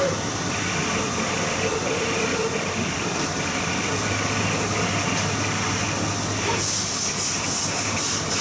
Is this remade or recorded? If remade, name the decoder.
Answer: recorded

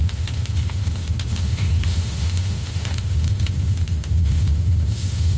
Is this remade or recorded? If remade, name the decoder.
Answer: remade, autoencoder, DAC-VAE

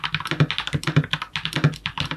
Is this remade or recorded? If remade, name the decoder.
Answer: recorded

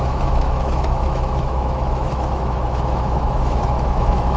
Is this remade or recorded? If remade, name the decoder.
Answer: remade, autoencoder, DAC-VAE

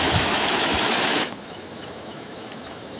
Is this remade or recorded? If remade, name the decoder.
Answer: remade, autoencoder, DAC-VAE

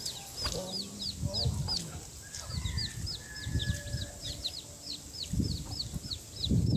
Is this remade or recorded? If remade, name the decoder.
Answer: recorded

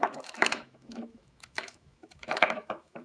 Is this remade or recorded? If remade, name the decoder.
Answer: remade, autoencoder, DAC-VAE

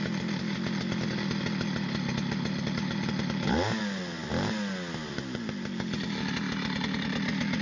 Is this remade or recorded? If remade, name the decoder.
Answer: recorded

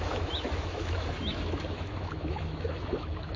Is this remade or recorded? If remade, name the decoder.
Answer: remade, autoencoder, DAC-VAE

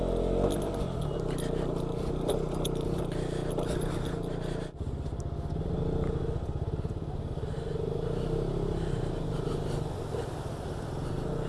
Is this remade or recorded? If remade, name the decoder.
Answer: recorded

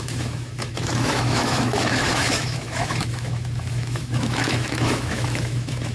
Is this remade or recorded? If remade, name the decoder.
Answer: remade, autoencoder, DAC-VAE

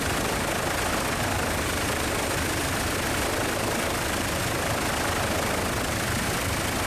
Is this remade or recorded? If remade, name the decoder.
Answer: recorded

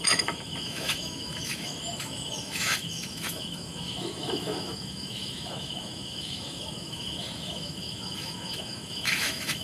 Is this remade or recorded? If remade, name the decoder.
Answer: remade, autoencoder, DAC-VAE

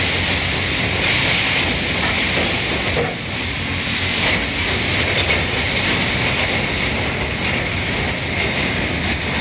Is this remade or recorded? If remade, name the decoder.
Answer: recorded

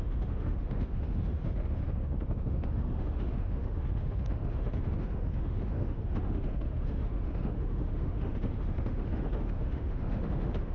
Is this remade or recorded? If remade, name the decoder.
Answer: remade, autoencoder, DAC-VAE